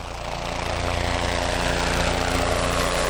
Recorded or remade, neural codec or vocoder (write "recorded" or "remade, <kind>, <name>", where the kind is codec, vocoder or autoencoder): recorded